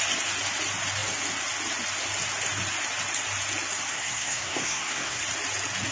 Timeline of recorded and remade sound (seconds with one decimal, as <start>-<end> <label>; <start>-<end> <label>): 0.0-3.9 recorded; 3.9-5.2 remade; 5.2-5.9 recorded